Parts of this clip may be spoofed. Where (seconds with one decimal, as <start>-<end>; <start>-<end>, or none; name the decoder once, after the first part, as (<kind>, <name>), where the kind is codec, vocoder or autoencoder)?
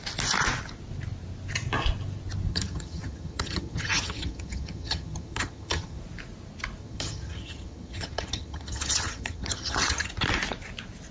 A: 2.5-6.0 (vocoder, HiFi-GAN); 6.8-10.1